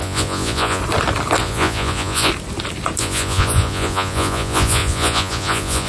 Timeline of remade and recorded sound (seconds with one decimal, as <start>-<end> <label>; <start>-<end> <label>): 0.0-0.8 remade; 0.8-1.4 recorded; 1.4-2.3 remade; 2.3-3.0 recorded; 3.0-5.9 remade